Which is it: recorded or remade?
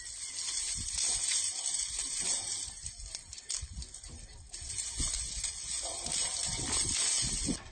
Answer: recorded